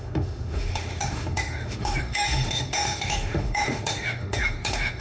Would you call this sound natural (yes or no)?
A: no